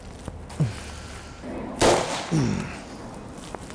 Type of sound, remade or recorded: recorded